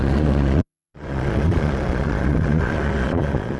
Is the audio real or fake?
fake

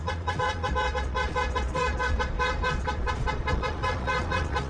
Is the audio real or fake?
fake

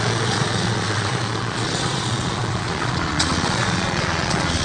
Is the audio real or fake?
fake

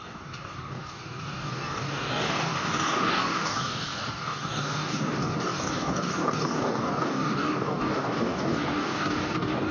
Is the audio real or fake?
fake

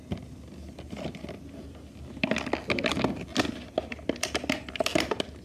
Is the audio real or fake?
real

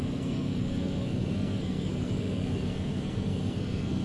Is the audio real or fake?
fake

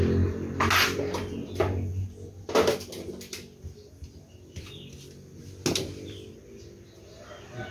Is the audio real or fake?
real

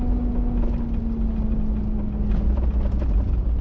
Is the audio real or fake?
real